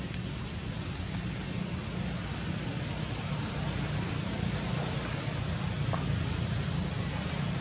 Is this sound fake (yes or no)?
no